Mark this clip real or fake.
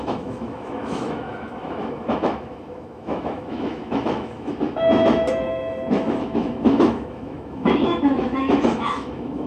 fake